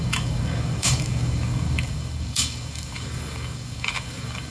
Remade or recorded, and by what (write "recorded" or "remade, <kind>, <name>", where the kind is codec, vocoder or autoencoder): remade, codec, DAC